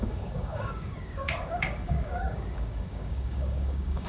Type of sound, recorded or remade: remade